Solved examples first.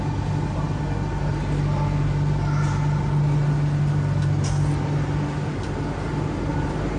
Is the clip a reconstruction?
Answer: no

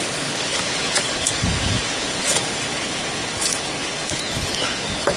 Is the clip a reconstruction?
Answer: yes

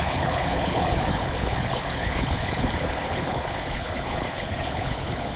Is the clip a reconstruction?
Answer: yes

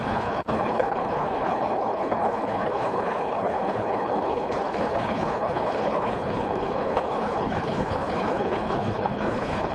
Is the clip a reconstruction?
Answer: yes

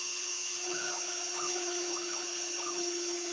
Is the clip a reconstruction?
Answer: yes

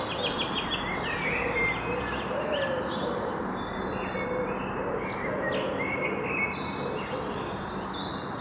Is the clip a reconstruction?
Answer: no